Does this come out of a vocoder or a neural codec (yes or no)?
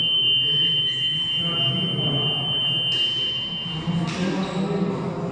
no